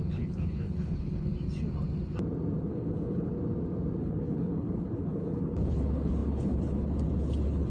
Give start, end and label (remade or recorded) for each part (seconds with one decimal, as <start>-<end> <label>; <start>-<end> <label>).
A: 0.0-1.3 remade; 1.3-2.6 recorded; 2.6-3.3 remade; 3.3-4.0 recorded; 4.0-7.7 remade